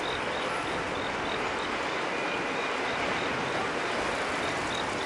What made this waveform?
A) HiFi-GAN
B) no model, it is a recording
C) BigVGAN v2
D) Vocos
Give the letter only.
B